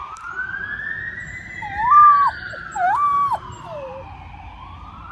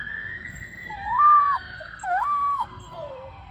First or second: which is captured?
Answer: first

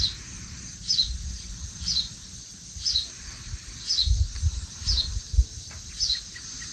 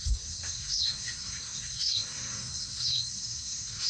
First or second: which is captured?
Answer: first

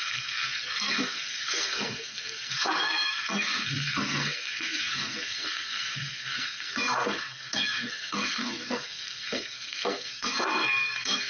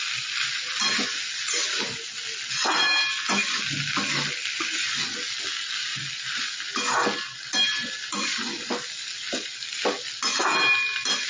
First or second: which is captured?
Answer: second